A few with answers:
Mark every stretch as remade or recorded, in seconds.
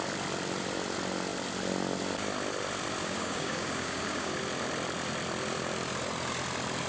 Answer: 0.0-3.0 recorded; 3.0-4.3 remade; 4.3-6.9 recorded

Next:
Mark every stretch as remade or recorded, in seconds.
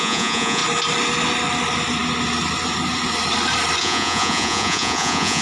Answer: 0.0-0.6 remade; 0.6-3.8 recorded; 3.8-5.4 remade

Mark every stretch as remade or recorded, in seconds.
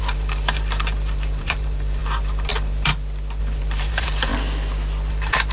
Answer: 0.0-2.9 remade; 2.9-3.4 recorded; 3.4-4.3 remade; 4.3-5.1 recorded; 5.1-5.5 remade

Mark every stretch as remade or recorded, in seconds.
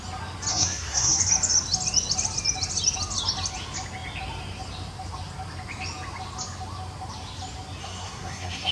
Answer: 0.0-0.5 recorded; 0.5-1.2 remade; 1.2-7.8 recorded; 7.8-8.7 remade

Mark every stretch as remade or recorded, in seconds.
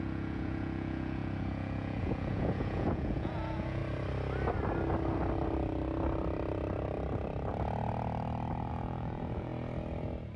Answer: 0.0-3.8 remade; 3.8-8.7 recorded; 8.7-9.5 remade; 9.5-10.4 recorded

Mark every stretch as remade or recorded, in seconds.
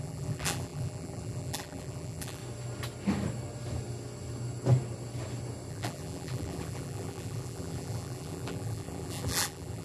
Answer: 0.0-2.4 remade; 2.4-5.7 recorded; 5.7-9.8 remade